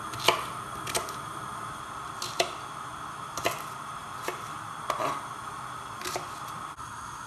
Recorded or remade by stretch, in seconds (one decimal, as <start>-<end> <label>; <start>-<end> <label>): 0.0-7.3 recorded